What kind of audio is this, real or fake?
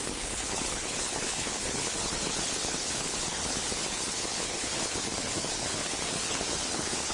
fake